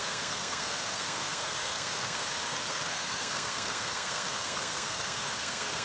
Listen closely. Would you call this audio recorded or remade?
remade